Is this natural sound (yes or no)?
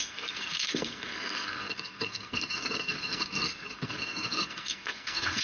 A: no